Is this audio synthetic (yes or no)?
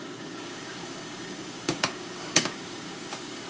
yes